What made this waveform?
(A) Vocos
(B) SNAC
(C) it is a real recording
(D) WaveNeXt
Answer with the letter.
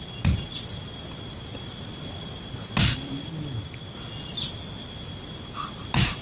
C